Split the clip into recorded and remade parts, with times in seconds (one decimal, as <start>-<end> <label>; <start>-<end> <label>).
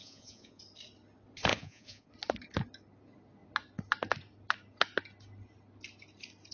0.0-0.6 remade; 0.6-1.5 recorded; 1.5-2.1 remade; 2.1-6.5 recorded